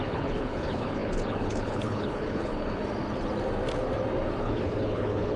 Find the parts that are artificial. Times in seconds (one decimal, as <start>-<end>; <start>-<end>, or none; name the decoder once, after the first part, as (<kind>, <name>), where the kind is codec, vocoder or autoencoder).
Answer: 0.0-2.8 (codec, HILCodec); 4.4-5.4